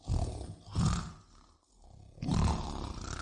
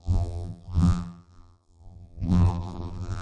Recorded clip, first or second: first